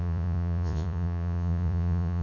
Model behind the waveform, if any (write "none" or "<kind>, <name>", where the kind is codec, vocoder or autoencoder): vocoder, Vocos